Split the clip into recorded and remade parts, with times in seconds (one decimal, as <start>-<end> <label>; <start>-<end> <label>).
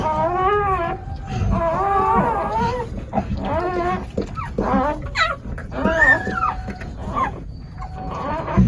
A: 0.0-5.6 recorded; 5.6-8.2 remade; 8.2-8.7 recorded